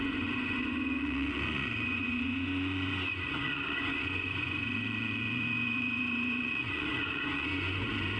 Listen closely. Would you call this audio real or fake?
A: fake